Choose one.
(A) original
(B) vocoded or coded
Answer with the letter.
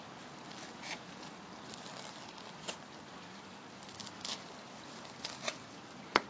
A